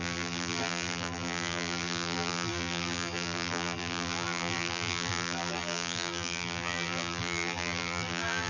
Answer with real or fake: fake